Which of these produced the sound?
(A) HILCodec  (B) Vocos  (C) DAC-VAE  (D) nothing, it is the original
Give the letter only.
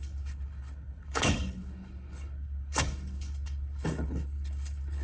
A